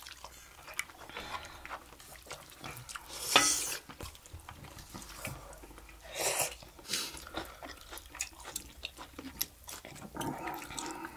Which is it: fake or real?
real